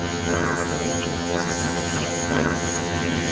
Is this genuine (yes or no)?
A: no